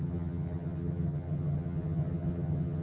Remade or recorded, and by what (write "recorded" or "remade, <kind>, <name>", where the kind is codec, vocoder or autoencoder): remade, vocoder, HiFi-GAN